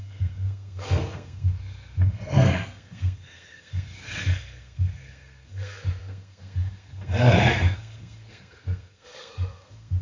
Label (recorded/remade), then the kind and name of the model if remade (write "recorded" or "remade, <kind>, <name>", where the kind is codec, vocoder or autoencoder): remade, codec, SNAC